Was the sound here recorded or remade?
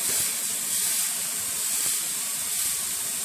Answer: recorded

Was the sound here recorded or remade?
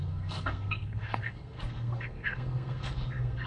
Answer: remade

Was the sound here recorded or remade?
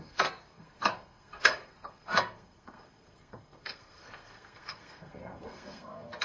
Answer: remade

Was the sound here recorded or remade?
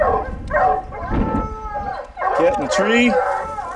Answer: recorded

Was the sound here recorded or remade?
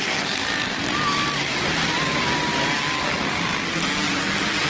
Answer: recorded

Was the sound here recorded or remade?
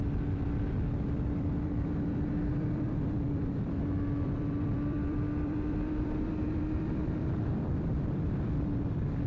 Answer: remade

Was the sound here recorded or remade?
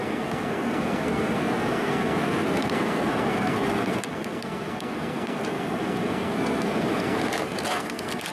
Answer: remade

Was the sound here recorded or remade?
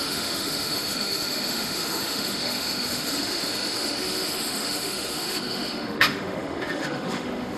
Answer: remade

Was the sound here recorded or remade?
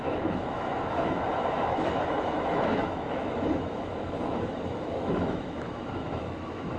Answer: remade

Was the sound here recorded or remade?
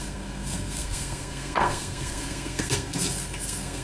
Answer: remade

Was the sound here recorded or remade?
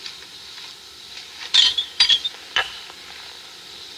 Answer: remade